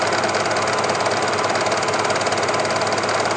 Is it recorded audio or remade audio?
recorded